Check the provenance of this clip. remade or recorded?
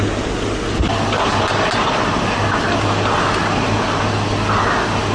recorded